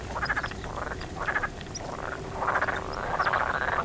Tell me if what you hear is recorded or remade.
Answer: recorded